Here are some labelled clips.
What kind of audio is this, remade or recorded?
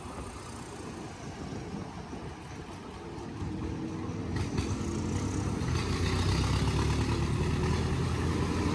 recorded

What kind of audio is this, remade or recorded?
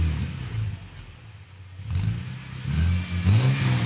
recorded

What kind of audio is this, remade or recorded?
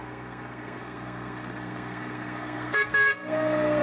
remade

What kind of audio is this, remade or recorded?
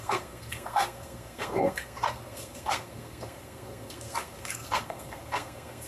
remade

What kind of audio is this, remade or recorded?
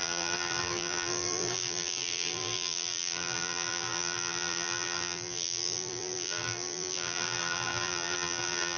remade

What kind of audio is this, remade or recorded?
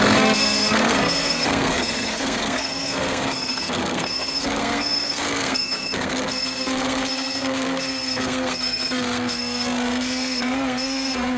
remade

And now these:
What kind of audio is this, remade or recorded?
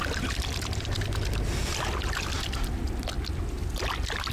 recorded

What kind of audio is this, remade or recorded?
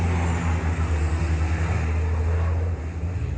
recorded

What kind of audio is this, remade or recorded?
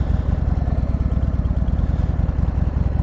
recorded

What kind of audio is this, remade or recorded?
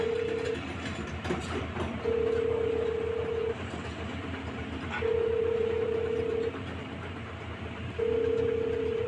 remade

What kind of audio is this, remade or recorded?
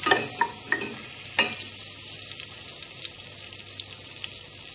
recorded